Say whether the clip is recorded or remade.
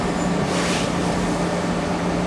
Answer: remade